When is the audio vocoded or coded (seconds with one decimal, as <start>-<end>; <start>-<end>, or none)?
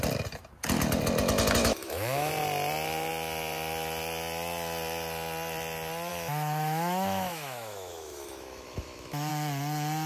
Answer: 1.6-2.3; 6.1-9.3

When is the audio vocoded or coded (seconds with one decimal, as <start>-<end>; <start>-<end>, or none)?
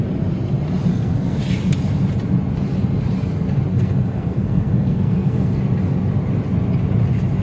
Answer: 0.9-1.4; 3.7-5.6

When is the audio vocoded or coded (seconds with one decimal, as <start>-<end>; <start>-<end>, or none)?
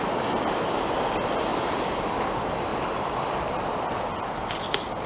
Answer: none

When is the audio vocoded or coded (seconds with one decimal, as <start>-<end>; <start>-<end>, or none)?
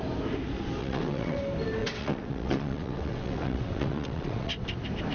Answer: 0.8-1.4; 1.8-4.5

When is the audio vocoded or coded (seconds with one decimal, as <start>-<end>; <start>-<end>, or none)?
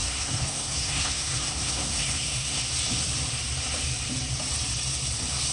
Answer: 0.0-2.6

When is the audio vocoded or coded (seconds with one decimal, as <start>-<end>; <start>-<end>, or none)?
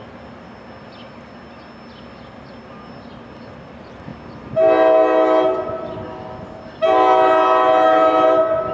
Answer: none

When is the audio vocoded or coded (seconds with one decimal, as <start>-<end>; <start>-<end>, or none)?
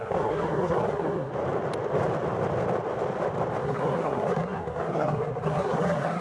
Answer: 0.0-1.3; 3.6-6.2